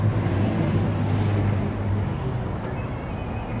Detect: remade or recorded recorded